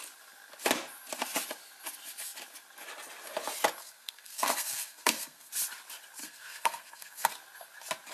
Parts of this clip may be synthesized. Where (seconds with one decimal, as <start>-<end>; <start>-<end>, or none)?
3.8-5.5; 6.2-7.3